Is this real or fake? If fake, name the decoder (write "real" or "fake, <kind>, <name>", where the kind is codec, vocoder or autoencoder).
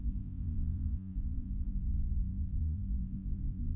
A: fake, vocoder, Vocos